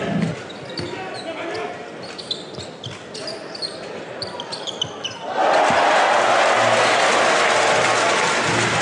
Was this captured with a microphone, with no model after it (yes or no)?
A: yes